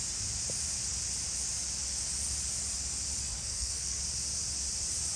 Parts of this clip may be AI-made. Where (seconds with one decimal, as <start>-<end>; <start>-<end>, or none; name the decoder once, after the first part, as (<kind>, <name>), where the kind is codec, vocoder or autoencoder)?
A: 3.2-4.0 (codec, SNAC)